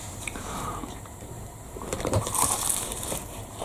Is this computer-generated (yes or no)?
yes